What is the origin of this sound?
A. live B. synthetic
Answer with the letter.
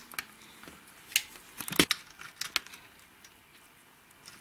A